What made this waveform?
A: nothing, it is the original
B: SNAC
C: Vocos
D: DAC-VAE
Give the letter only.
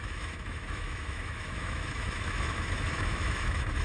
D